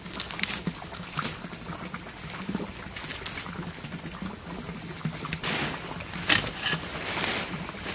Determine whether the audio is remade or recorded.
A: recorded